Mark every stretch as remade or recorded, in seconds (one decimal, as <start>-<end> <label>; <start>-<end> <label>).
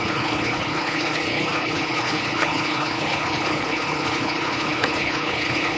0.0-5.8 remade